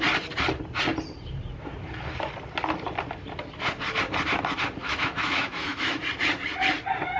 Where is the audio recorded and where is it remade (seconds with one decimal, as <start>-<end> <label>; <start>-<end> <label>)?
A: 0.0-4.8 recorded; 4.8-6.0 remade; 6.0-7.2 recorded

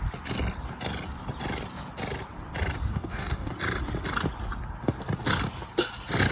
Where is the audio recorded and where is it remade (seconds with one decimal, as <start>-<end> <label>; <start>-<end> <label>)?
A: 0.0-2.9 recorded; 2.9-3.5 remade; 3.5-6.3 recorded

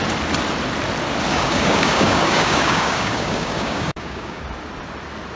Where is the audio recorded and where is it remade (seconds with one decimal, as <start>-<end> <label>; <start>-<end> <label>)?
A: 0.0-1.3 recorded; 1.3-4.4 remade; 4.4-5.4 recorded

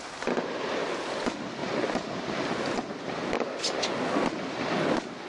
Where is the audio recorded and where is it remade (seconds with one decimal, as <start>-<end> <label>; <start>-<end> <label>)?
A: 0.0-1.6 recorded; 1.6-2.9 remade; 2.9-5.3 recorded

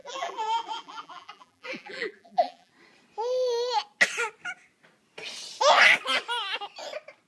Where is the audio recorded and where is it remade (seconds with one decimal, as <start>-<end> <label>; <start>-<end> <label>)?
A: 0.0-2.7 remade; 2.7-7.3 recorded

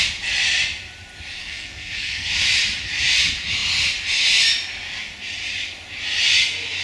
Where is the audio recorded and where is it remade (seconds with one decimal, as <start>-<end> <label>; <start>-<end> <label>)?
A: 0.0-1.4 recorded; 1.4-2.3 remade; 2.3-6.8 recorded